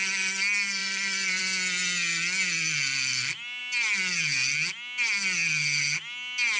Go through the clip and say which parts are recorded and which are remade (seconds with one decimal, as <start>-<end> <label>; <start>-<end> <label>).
0.0-0.8 recorded; 0.8-1.4 remade; 1.4-6.6 recorded